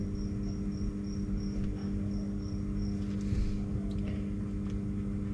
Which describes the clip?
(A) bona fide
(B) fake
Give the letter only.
A